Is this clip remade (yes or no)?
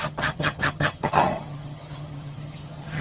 yes